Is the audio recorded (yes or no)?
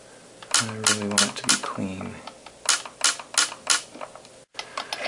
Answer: yes